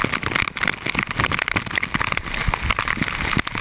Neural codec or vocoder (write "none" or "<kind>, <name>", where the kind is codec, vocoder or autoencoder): none